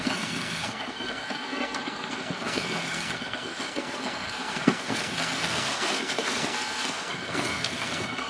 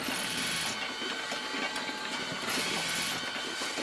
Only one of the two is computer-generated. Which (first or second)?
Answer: first